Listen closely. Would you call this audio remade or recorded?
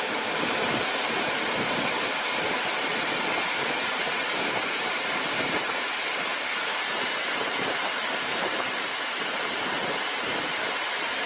remade